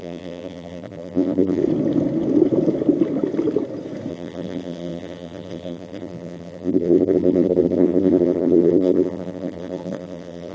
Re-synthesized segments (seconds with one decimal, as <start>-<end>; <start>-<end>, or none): 0.0-1.6; 4.1-10.5